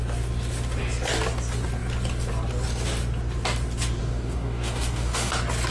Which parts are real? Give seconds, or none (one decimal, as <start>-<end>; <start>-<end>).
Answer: 0.0-4.0; 5.3-5.7

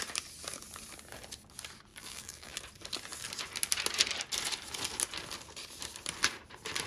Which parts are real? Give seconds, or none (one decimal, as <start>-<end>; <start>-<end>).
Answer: 0.0-1.9; 2.6-6.9

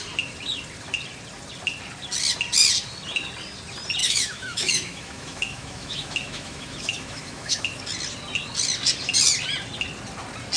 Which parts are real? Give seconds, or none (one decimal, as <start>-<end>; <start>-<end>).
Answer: 0.0-4.0; 7.8-10.6

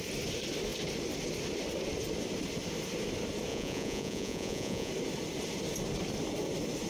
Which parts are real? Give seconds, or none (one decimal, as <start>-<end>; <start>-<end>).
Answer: 0.0-3.5; 4.9-6.9

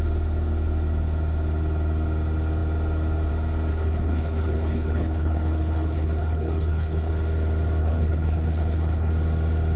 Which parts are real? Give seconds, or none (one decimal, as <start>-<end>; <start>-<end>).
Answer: 0.0-3.7; 7.1-7.8; 9.1-9.8

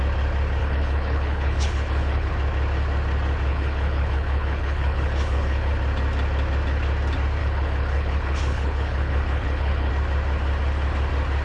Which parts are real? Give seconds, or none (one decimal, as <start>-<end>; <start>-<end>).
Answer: 0.0-0.6; 2.3-3.5; 5.7-7.4; 9.9-11.4

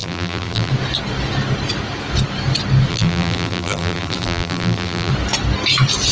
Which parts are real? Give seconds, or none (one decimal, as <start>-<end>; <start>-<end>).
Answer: 0.7-2.9; 5.1-6.1